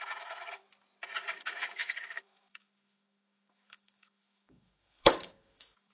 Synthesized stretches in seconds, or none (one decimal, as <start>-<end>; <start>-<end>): 0.0-0.6; 1.2-5.9